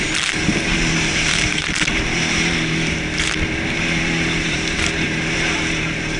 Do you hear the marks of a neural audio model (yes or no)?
yes